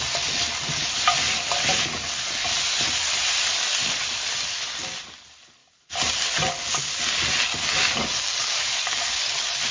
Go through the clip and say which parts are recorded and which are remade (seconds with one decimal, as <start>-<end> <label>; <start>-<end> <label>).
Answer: 0.0-9.7 recorded